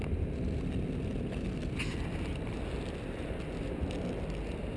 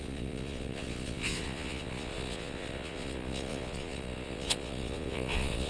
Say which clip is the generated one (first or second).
second